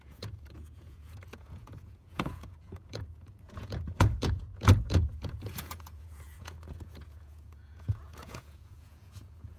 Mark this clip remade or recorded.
remade